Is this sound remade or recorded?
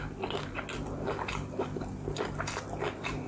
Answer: recorded